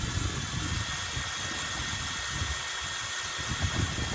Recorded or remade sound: recorded